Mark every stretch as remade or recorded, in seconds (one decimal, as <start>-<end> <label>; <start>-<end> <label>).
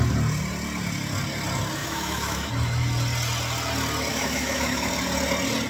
0.0-1.8 recorded; 1.8-2.5 remade; 2.5-4.1 recorded; 4.1-4.9 remade; 4.9-5.7 recorded